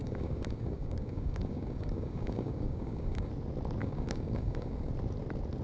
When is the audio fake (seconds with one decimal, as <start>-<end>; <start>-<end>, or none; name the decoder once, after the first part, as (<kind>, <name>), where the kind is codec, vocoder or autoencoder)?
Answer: 0.0-3.3 (codec, DAC); 3.8-4.9